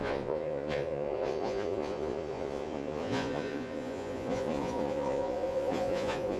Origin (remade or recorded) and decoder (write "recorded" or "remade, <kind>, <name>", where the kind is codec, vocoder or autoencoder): remade, vocoder, Vocos